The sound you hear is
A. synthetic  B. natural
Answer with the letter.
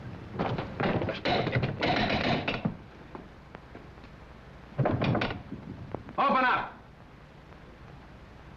A